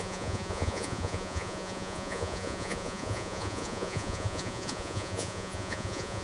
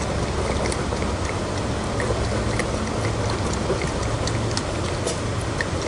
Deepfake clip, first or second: first